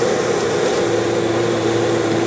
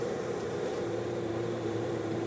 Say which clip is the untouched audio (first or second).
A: first